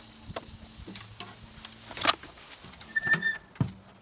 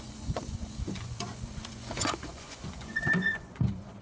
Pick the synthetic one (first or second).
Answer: second